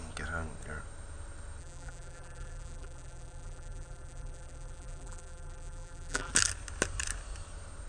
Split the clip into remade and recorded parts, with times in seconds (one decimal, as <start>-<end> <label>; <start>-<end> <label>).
0.0-1.6 recorded; 1.6-6.3 remade; 6.3-7.9 recorded